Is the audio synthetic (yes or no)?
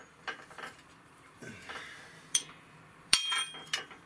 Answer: yes